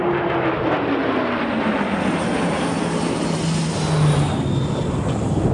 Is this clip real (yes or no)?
yes